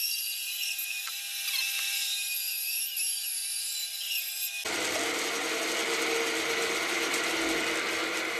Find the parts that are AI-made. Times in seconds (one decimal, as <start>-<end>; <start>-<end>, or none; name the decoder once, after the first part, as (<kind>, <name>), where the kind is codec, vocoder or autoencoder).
none